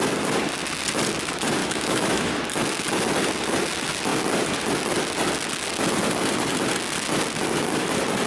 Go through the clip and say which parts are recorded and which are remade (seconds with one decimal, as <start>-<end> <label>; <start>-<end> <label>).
0.0-1.6 recorded; 1.6-2.3 remade; 2.3-8.3 recorded